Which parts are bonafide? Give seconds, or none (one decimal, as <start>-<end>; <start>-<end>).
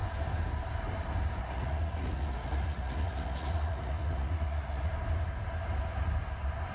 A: 0.0-1.4; 4.9-6.7